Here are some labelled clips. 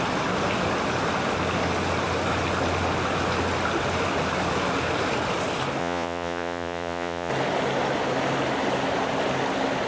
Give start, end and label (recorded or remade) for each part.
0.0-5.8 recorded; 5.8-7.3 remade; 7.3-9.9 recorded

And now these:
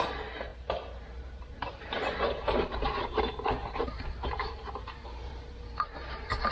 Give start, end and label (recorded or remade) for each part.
0.0-6.5 remade

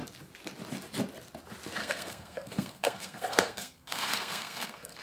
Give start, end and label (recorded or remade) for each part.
0.0-1.8 recorded; 1.8-5.0 remade